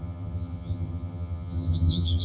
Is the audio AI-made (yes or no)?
yes